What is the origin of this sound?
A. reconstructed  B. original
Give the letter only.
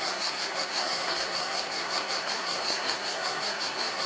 A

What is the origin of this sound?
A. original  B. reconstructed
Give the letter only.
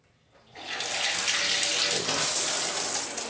A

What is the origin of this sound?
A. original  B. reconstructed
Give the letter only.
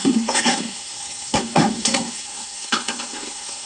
B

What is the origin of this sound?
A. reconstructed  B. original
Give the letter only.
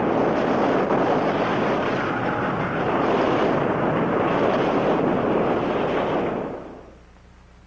B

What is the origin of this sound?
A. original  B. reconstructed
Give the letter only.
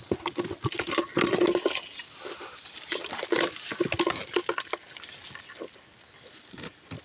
A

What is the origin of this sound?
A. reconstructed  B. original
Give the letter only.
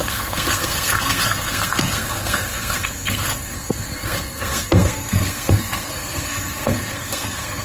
A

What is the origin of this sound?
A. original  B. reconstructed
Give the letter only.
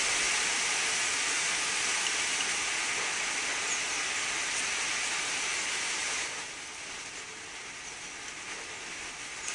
A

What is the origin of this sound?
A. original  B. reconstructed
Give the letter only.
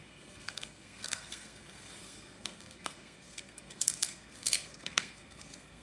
B